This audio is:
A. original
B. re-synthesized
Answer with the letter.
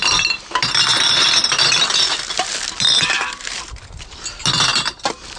A